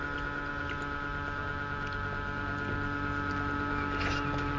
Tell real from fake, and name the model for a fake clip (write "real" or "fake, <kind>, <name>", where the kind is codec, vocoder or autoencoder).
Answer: real